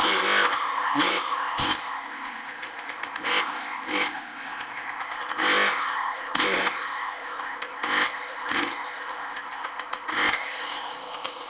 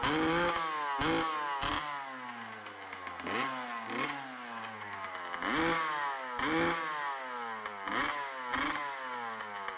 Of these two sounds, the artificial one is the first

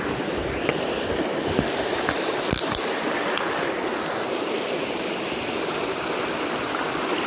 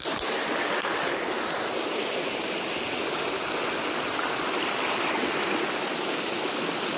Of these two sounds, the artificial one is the first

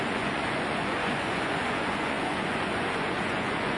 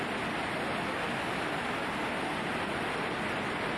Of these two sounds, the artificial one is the first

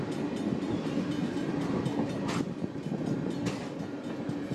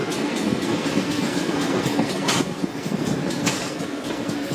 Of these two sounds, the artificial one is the second